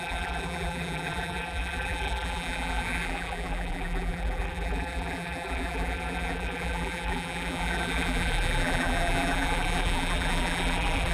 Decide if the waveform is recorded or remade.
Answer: remade